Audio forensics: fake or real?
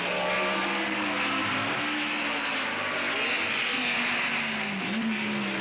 real